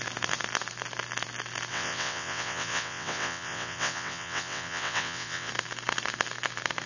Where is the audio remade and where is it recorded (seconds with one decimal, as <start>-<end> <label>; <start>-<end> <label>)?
0.0-1.7 recorded; 1.7-5.5 remade; 5.5-6.9 recorded